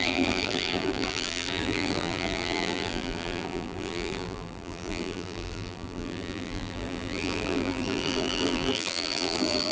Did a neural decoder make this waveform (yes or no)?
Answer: yes